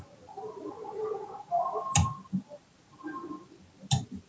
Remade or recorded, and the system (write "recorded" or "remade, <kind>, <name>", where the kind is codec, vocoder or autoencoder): recorded